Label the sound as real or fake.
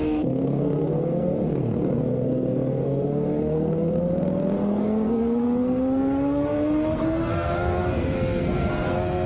fake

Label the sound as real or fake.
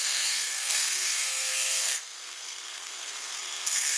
fake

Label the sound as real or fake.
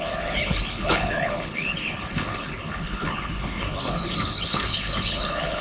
fake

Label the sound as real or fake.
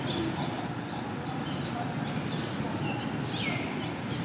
real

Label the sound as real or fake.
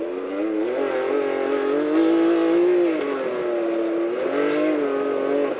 real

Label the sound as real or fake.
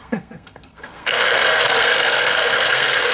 fake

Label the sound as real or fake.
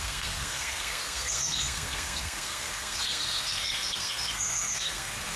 fake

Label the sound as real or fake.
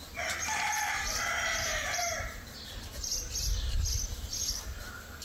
fake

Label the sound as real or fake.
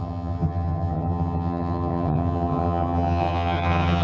fake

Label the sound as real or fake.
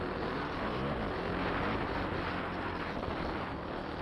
real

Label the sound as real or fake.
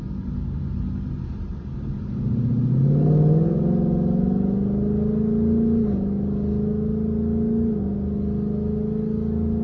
real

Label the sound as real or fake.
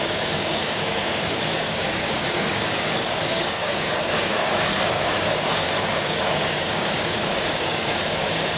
fake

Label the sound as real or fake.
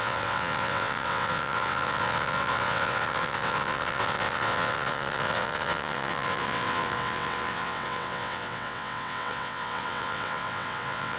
fake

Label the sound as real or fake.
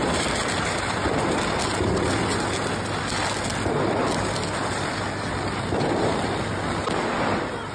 real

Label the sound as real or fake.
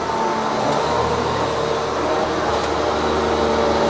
real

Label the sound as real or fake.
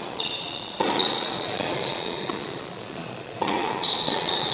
fake